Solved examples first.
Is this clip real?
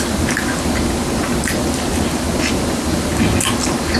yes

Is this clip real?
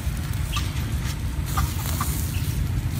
yes